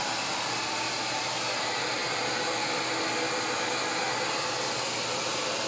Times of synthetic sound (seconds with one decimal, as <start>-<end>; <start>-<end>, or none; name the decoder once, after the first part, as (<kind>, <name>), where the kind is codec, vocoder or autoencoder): none